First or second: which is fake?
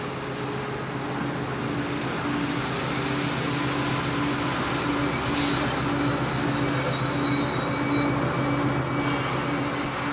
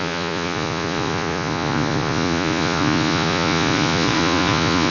second